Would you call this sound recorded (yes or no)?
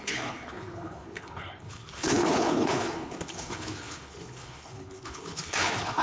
no